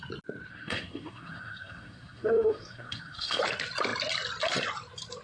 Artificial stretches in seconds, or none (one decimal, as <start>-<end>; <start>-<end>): 0.5-3.4